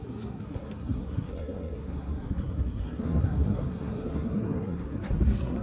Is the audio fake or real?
fake